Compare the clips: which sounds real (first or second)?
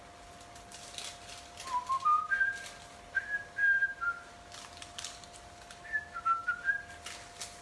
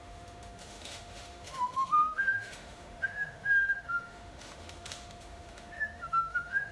first